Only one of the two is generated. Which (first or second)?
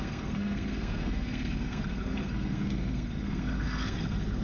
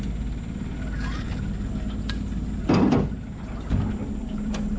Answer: first